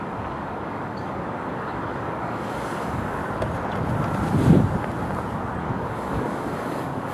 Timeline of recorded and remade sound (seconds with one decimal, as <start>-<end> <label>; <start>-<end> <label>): 0.0-3.2 remade; 3.2-5.6 recorded; 5.6-7.1 remade